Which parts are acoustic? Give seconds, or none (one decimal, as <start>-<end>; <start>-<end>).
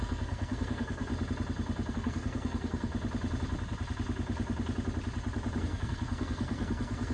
1.1-1.9; 2.9-5.6